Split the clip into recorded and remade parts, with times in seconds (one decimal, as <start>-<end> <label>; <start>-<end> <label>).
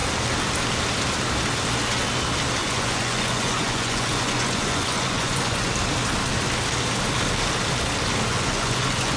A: 0.0-2.6 recorded; 2.6-5.7 remade; 5.7-8.3 recorded; 8.3-9.2 remade